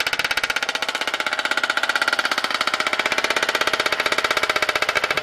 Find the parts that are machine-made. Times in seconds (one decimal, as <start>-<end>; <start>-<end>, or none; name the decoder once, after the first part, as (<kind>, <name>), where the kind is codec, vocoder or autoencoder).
none